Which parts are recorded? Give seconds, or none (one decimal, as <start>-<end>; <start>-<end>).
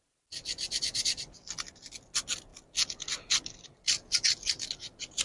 0.0-5.2